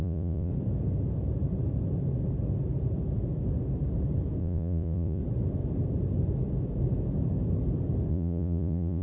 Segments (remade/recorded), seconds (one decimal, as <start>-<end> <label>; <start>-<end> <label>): 0.0-0.5 remade; 0.5-4.4 recorded; 4.4-5.2 remade; 5.2-8.1 recorded; 8.1-9.0 remade